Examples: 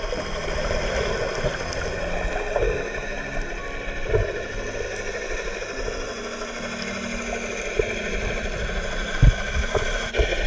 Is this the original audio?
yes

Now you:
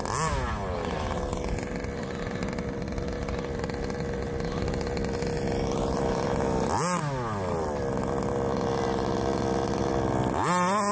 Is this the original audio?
yes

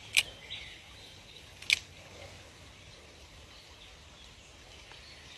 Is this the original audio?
yes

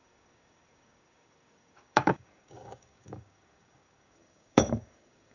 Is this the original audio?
no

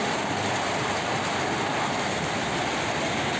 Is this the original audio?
yes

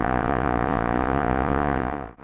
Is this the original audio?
no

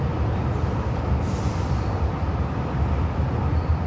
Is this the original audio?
no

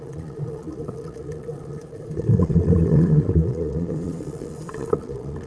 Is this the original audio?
no